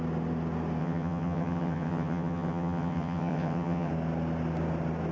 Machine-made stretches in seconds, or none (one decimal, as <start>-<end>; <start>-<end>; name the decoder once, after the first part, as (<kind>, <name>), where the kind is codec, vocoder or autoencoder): 0.8-3.9 (vocoder, HiFi-GAN)